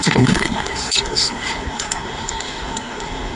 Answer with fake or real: fake